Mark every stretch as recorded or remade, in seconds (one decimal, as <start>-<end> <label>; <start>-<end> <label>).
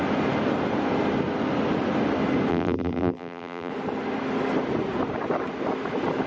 0.0-2.5 recorded; 2.5-3.7 remade; 3.7-6.3 recorded